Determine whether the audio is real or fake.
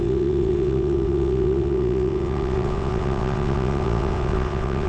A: fake